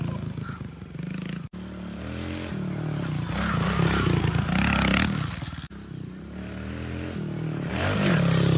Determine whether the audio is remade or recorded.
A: recorded